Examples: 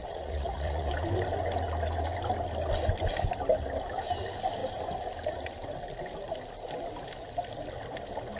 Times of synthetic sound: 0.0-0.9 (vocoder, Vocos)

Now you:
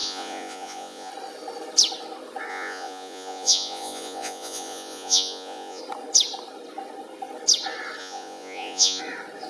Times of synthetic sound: 0.0-1.1 (vocoder, Vocos); 2.5-5.8; 8.0-9.0

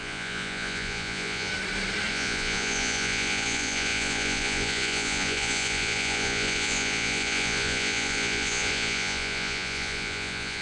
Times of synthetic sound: 0.0-1.5 (vocoder, Vocos); 2.1-10.6

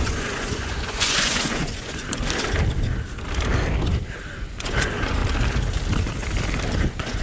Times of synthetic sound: 0.0-2.2 (vocoder, Vocos); 4.2-5.2; 6.8-7.2

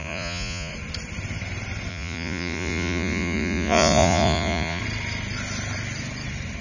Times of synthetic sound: 0.0-0.7 (vocoder, Vocos); 1.9-4.8

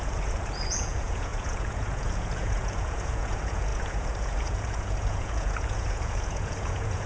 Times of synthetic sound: 0.0-7.1 (vocoder, Vocos)

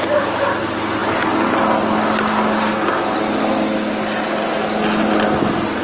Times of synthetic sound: none